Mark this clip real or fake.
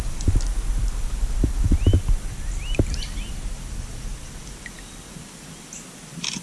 real